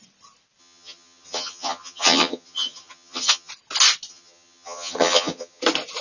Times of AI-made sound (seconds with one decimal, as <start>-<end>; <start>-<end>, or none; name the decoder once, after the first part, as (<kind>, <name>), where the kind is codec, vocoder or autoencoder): 0.6-3.5 (vocoder, HiFi-GAN); 4.1-5.6